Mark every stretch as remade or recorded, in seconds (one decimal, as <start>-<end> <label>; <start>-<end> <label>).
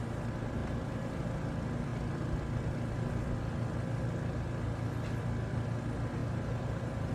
0.0-0.6 recorded; 0.6-1.2 remade; 1.2-6.2 recorded; 6.2-7.1 remade